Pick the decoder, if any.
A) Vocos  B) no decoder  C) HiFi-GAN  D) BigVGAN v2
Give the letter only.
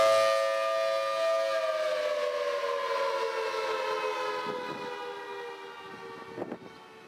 B